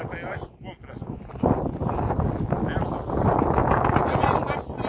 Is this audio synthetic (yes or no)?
no